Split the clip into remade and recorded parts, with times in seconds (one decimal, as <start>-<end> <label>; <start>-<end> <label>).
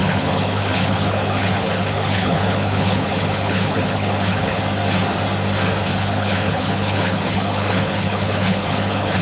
0.0-4.6 remade; 4.6-5.9 recorded; 5.9-9.2 remade